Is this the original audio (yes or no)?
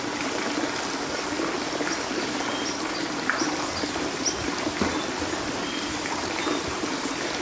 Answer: yes